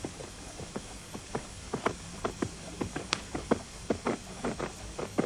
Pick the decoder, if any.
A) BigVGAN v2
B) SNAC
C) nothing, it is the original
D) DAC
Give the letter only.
D